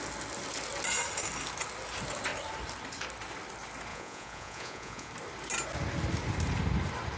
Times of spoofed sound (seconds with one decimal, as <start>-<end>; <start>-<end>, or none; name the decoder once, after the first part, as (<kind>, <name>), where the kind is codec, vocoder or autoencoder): 3.9-5.1 (vocoder, Vocos)